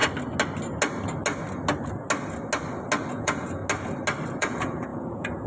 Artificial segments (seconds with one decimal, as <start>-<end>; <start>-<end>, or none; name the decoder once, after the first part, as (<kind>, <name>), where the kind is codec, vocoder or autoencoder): 3.1-3.6 (vocoder, Vocos); 4.4-5.5